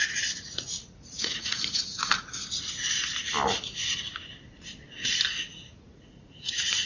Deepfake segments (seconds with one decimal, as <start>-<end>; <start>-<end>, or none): 0.0-1.9; 5.3-6.9